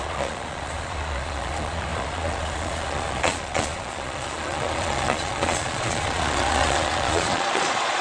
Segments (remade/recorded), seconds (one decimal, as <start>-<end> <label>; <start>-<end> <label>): 0.0-8.0 remade